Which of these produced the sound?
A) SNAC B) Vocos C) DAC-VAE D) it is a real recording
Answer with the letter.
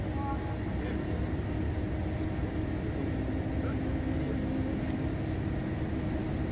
D